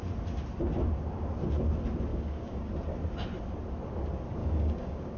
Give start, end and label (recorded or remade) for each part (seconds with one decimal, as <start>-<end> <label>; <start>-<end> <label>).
0.0-2.1 recorded; 2.1-2.7 remade; 2.7-4.4 recorded; 4.4-5.2 remade